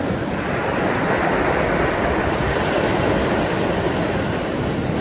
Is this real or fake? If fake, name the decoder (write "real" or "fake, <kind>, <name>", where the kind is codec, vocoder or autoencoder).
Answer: real